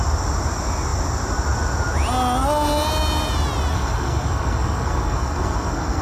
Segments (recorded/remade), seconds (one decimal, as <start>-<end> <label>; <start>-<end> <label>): 0.0-3.7 recorded; 3.7-6.0 remade